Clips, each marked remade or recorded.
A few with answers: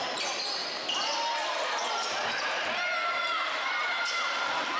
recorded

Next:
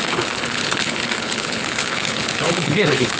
remade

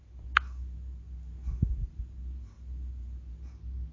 recorded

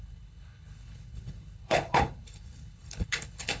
remade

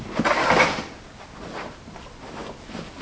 recorded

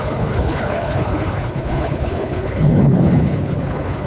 remade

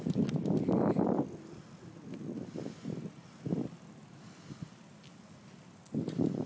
recorded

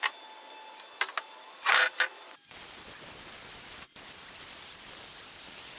recorded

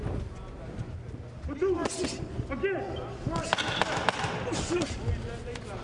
recorded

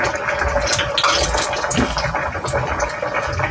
recorded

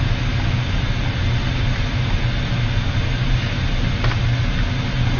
recorded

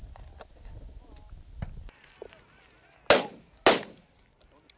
recorded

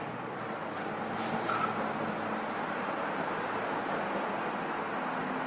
recorded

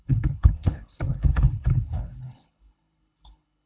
remade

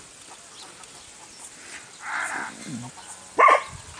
recorded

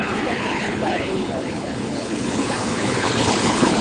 remade